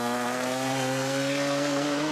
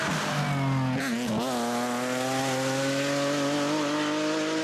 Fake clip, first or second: first